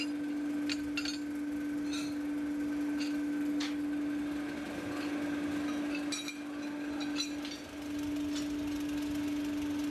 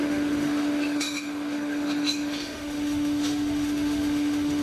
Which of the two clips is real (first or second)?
first